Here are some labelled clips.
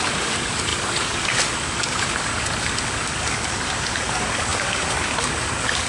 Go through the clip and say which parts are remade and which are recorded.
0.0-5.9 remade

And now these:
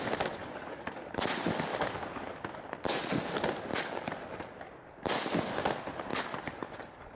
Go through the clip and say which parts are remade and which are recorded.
0.0-0.4 recorded; 0.4-1.1 remade; 1.1-1.7 recorded; 1.7-2.3 remade; 2.3-3.7 recorded; 3.7-4.7 remade; 4.7-6.1 recorded; 6.1-7.2 remade

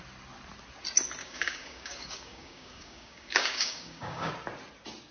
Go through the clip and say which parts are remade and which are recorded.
0.0-1.2 recorded; 1.2-4.3 remade; 4.3-5.1 recorded

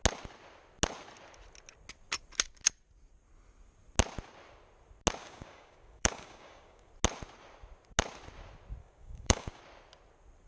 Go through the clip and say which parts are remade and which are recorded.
0.0-5.2 recorded; 5.2-6.9 remade; 6.9-8.8 recorded; 8.8-9.6 remade; 9.6-10.5 recorded

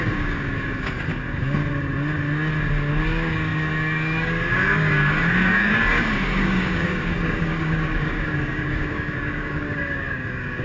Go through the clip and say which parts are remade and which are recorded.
0.0-1.6 remade; 1.6-2.9 recorded; 2.9-10.6 remade

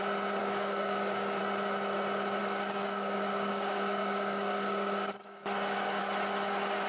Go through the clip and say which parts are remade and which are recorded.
0.0-0.4 recorded; 0.4-1.4 remade; 1.4-2.4 recorded; 2.4-6.0 remade; 6.0-6.9 recorded